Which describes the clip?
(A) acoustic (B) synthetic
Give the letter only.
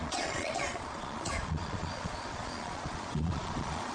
B